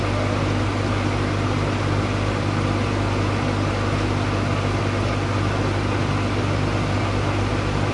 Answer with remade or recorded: recorded